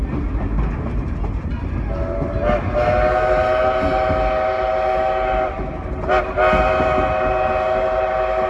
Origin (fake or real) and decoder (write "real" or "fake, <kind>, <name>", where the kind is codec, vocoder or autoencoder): real